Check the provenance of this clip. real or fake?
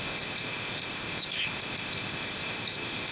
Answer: fake